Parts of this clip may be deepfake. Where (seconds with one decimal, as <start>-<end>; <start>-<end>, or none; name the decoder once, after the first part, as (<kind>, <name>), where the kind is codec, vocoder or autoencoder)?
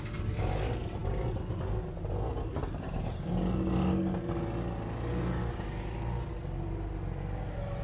none